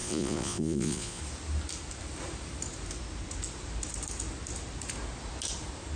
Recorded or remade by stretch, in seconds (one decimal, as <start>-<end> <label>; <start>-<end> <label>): 0.0-1.2 remade; 1.2-6.0 recorded